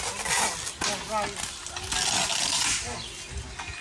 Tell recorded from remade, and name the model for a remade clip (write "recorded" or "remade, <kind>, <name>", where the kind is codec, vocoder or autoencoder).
recorded